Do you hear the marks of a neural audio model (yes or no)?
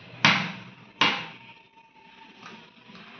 no